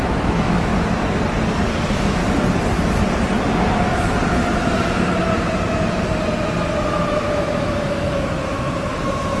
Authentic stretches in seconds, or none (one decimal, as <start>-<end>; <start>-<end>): 0.7-1.8; 2.2-6.9